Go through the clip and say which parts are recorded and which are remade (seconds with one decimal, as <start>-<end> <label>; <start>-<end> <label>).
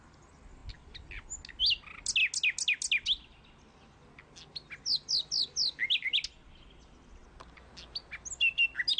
0.0-9.0 recorded